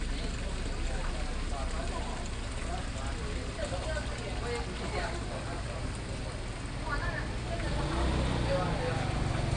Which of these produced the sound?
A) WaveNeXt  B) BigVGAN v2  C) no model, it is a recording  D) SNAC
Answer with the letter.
C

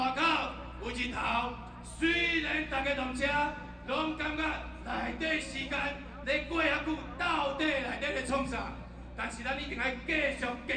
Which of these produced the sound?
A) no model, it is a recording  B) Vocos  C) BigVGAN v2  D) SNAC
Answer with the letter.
A